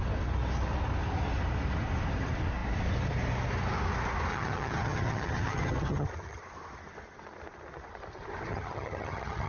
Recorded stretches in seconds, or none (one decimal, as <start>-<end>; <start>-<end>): 0.0-4.3; 6.4-8.5